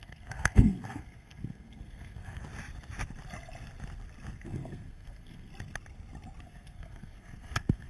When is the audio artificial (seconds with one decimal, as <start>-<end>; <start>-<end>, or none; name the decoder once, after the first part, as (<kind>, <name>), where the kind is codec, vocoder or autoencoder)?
0.0-2.4 (codec, SNAC); 4.4-5.5; 6.4-7.9